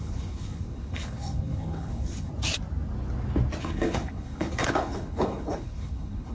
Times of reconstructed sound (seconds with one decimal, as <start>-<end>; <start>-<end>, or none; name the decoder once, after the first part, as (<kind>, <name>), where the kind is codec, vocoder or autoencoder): 0.0-2.3 (codec, HILCodec); 3.6-6.3

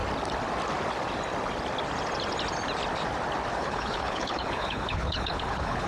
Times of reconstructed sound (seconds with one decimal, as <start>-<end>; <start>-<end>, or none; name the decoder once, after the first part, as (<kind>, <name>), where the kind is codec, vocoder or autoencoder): 3.5-5.9 (codec, HILCodec)